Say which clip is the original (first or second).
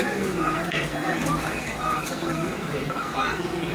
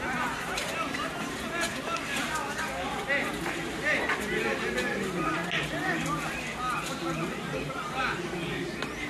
second